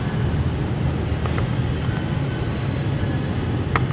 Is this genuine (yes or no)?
yes